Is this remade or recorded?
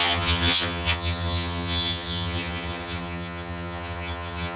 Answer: remade